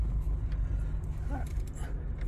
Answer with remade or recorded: recorded